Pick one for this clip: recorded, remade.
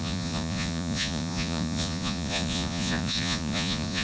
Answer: remade